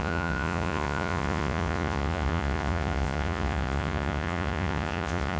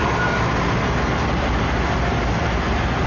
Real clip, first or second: second